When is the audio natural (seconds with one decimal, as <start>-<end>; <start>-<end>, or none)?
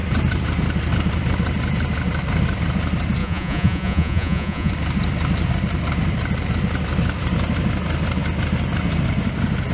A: 0.0-3.2; 4.7-9.7